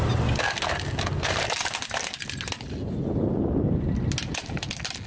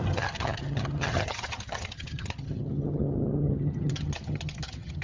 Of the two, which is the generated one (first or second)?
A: second